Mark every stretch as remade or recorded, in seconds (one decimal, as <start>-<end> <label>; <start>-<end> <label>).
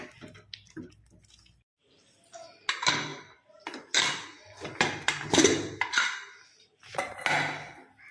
0.0-8.1 recorded